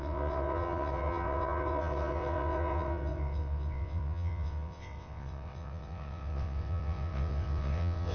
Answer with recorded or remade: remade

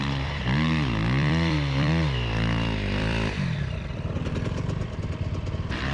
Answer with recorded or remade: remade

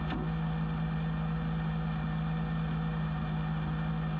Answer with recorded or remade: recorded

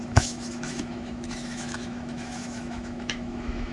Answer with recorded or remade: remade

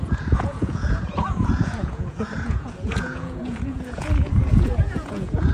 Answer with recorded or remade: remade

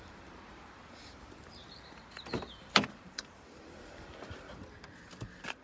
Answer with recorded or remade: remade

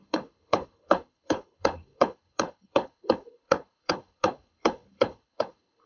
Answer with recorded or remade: remade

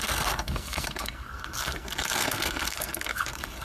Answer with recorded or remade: remade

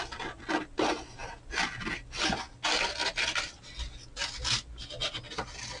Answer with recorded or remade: recorded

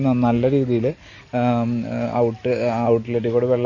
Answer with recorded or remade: recorded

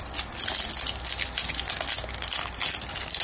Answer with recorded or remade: recorded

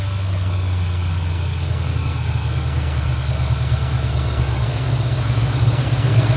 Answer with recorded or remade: remade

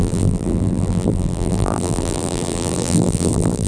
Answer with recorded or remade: remade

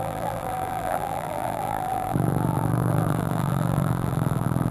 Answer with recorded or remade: remade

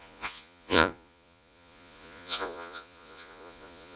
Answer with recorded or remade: remade